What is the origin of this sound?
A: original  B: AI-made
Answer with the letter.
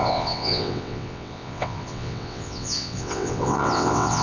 B